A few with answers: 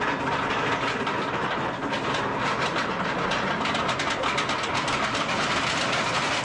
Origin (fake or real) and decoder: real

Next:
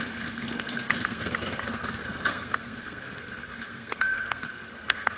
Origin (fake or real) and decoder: fake, codec, SNAC